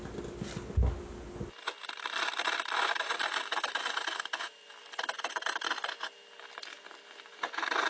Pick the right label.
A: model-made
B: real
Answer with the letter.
B